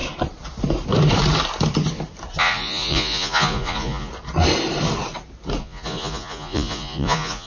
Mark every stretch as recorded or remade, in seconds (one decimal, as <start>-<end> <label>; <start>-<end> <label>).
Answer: 0.0-2.4 recorded; 2.4-4.1 remade; 4.1-5.6 recorded; 5.6-7.5 remade